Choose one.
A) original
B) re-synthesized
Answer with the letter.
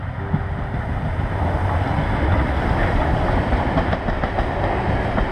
A